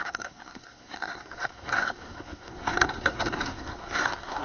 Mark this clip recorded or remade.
remade